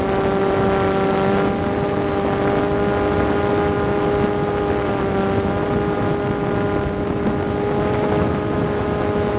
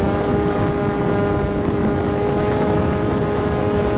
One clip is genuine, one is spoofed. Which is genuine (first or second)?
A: first